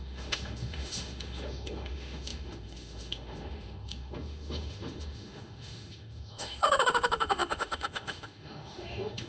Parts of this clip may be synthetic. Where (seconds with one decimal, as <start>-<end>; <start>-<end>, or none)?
0.0-9.3